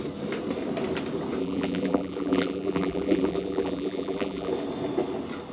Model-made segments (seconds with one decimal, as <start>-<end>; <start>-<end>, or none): 1.4-4.5